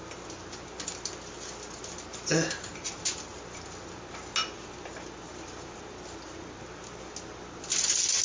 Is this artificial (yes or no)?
no